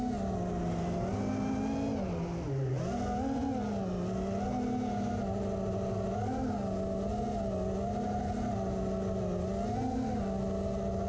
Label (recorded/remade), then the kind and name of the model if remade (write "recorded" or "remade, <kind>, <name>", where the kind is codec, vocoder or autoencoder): recorded